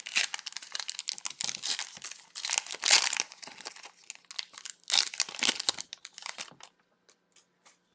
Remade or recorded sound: recorded